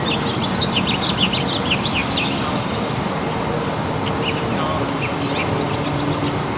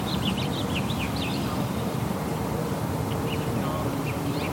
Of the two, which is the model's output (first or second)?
second